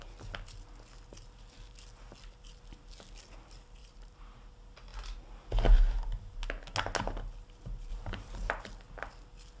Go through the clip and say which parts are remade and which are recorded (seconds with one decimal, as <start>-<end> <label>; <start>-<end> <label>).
0.0-3.8 recorded; 3.8-4.5 remade; 4.5-7.9 recorded; 7.9-8.5 remade; 8.5-9.6 recorded